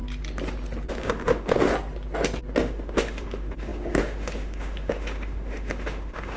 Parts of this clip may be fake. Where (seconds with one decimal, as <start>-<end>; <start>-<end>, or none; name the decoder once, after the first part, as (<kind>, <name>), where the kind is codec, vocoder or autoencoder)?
0.9-1.7 (autoencoder, DAC-VAE); 2.6-6.4